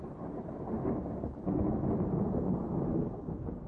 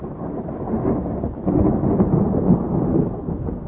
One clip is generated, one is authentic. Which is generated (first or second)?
second